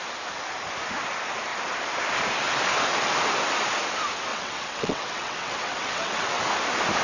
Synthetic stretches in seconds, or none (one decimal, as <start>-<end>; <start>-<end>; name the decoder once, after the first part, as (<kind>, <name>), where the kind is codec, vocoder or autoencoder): 4.3-6.4 (vocoder, WaveNeXt)